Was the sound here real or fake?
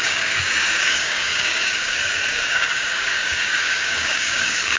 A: fake